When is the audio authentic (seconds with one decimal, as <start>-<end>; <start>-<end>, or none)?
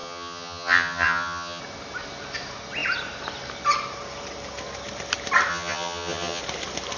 1.6-5.5; 6.4-7.0